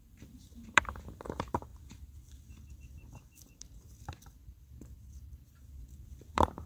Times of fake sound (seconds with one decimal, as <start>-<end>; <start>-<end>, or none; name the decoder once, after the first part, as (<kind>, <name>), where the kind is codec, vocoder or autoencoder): 0.0-4.4 (vocoder, BigVGAN v2); 5.2-6.7